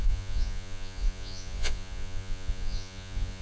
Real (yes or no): no